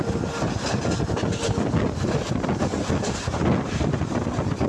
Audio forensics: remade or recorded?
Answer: recorded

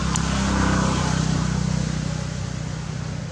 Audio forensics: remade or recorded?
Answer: recorded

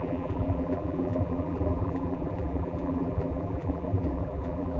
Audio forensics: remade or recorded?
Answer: remade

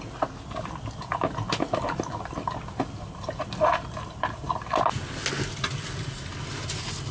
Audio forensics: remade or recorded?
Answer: recorded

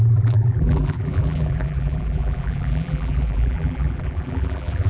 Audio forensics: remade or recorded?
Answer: remade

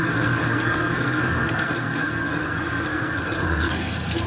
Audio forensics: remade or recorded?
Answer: remade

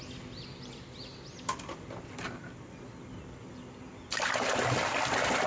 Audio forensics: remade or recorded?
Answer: recorded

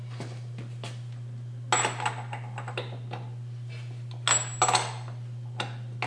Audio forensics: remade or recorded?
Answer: recorded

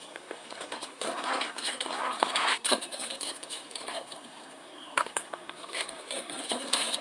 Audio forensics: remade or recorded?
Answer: remade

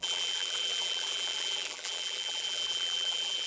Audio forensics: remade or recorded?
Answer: remade